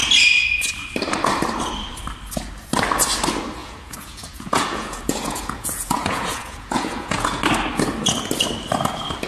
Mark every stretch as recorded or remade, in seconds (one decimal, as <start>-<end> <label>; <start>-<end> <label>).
0.0-3.6 recorded; 3.6-7.4 remade; 7.4-9.3 recorded